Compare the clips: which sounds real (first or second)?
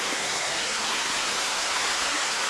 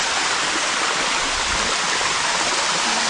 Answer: second